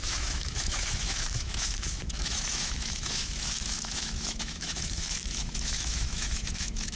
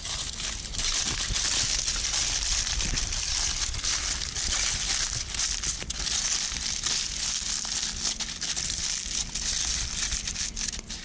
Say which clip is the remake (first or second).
first